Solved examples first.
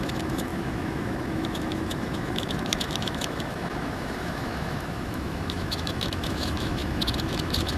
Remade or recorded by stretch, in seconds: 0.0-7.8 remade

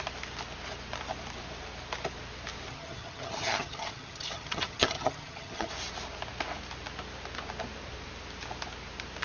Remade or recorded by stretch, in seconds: 0.0-2.7 recorded; 2.7-5.7 remade; 5.7-9.2 recorded

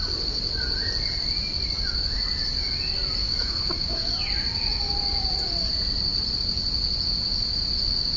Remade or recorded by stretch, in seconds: 0.0-3.2 recorded; 3.2-4.1 remade; 4.1-8.2 recorded

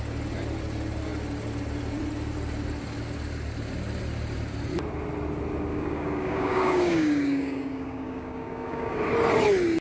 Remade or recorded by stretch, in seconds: 0.0-5.7 recorded; 5.7-9.0 remade; 9.0-9.8 recorded

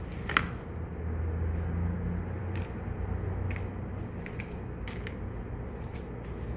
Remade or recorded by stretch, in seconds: 0.0-6.6 recorded

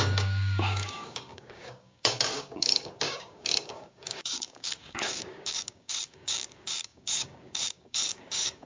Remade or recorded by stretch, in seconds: 0.0-8.7 remade

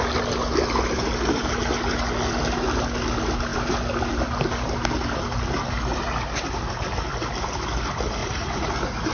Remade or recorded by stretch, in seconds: 0.0-8.2 recorded; 8.2-8.7 remade; 8.7-9.1 recorded

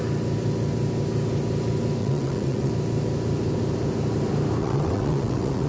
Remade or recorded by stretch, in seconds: 0.0-2.0 recorded; 2.0-2.7 remade; 2.7-4.6 recorded; 4.6-5.7 remade